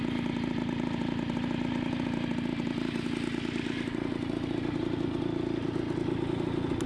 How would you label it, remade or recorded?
recorded